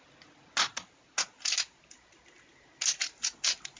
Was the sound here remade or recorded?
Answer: recorded